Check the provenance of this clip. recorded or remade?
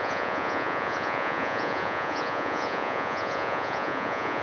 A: remade